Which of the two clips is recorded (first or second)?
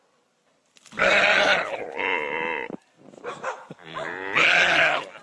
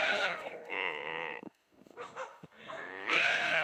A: first